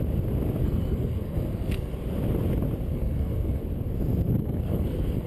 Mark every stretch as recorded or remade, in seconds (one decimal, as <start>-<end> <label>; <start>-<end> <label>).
0.0-0.6 recorded; 0.6-1.9 remade; 1.9-2.9 recorded; 2.9-3.6 remade; 3.6-4.4 recorded; 4.4-5.3 remade